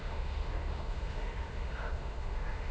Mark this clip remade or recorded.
remade